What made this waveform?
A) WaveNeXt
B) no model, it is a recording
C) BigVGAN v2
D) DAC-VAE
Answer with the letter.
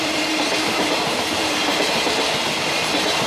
C